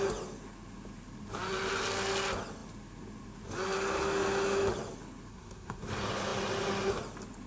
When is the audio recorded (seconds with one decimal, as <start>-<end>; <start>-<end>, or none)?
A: 0.0-5.3; 5.8-7.5